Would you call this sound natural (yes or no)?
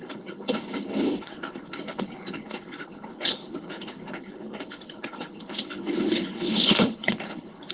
no